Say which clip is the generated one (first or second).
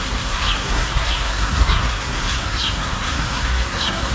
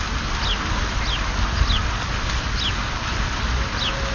first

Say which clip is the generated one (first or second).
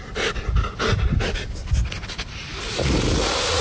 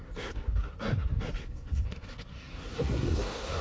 second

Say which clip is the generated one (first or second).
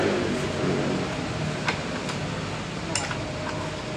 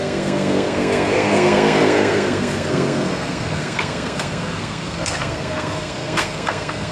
second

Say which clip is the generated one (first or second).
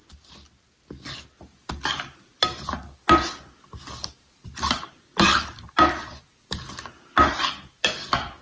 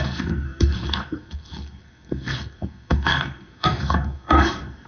second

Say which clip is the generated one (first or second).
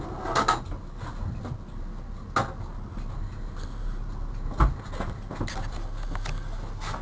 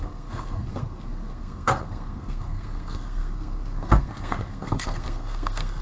second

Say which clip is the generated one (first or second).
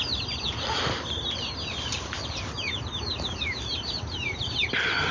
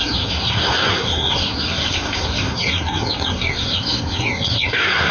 second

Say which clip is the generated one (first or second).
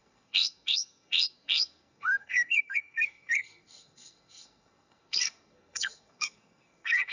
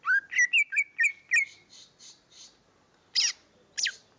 first